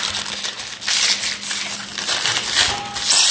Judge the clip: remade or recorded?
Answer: recorded